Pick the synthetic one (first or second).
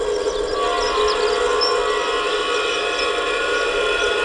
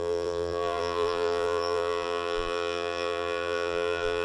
second